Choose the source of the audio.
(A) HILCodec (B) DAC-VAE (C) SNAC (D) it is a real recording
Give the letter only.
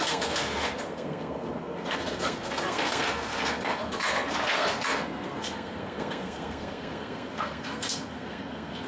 C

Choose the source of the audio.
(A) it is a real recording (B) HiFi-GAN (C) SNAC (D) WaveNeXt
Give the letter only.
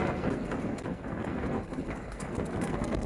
C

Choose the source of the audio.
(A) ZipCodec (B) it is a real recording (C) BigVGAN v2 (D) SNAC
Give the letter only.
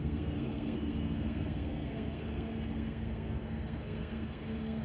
D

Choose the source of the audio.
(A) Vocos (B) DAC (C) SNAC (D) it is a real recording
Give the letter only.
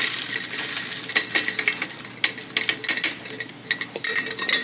D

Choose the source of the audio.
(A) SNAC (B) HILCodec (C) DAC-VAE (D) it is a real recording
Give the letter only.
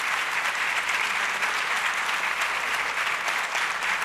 D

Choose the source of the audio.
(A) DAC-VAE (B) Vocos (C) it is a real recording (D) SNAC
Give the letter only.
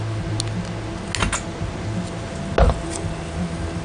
C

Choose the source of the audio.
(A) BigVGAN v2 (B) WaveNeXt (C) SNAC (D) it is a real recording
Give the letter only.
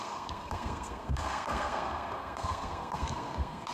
C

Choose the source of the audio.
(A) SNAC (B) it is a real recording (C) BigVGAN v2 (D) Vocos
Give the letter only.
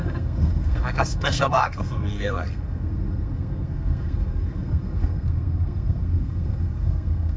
A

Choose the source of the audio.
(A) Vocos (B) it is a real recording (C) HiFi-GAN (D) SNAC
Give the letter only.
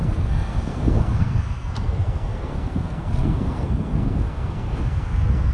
D